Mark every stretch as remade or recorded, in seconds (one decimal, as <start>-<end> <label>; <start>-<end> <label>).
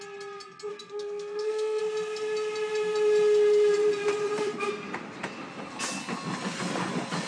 0.0-0.7 recorded; 0.7-1.8 remade; 1.8-7.3 recorded